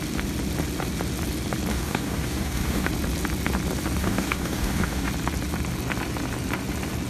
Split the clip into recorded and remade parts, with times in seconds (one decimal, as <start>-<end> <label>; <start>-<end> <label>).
0.0-1.7 recorded; 1.7-2.9 remade; 2.9-4.0 recorded; 4.0-5.1 remade; 5.1-7.1 recorded